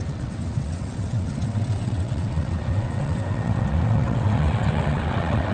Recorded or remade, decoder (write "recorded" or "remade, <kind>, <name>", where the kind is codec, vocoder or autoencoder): remade, vocoder, WaveNeXt